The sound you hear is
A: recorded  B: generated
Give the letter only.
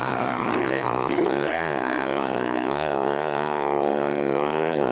B